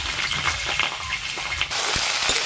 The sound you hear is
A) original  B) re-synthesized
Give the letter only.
A